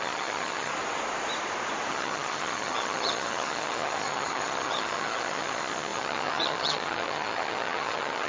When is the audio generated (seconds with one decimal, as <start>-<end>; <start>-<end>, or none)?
0.0-0.7; 1.9-8.3